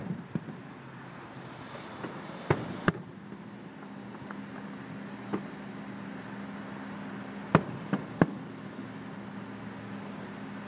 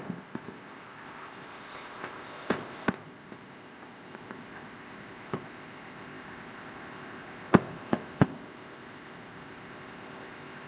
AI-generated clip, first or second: second